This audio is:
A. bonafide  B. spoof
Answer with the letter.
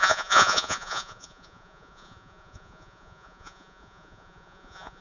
B